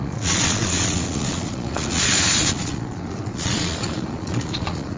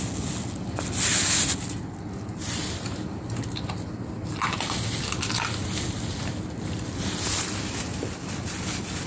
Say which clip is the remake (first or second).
first